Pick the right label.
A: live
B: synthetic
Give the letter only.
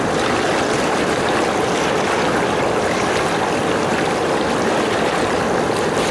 A